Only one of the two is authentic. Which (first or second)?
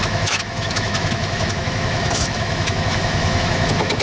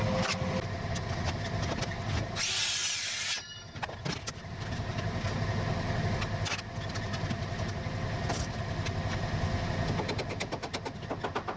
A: second